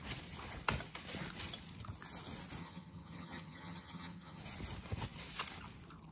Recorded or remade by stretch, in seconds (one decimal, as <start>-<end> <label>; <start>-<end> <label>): 0.0-2.6 recorded; 2.6-4.4 remade; 4.4-6.1 recorded